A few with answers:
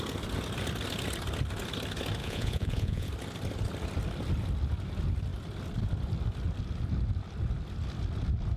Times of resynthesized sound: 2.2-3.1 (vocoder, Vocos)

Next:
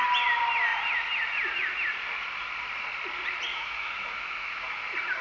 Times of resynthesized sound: 3.5-4.8 (autoencoder, DAC-VAE)

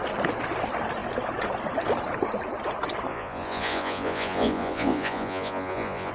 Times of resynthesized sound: 3.1-6.1 (vocoder, Vocos)

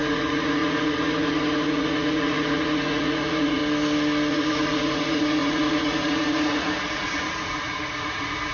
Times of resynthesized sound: 0.0-3.6 (vocoder, Vocos); 4.3-8.5

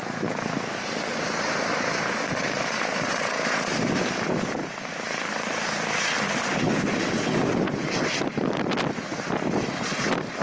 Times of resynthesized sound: 1.1-2.7 (vocoder, BigVGAN v2); 4.6-6.2; 6.7-7.8

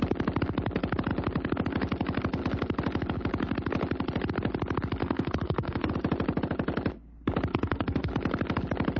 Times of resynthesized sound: 5.0-5.9 (codec, SNAC); 7.5-8.1

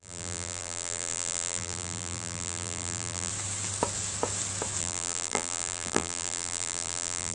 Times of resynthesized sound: 0.0-3.3 (vocoder, BigVGAN v2); 4.8-7.3

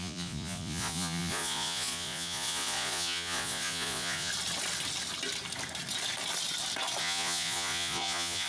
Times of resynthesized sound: 0.0-4.3 (vocoder, Vocos); 7.0-8.5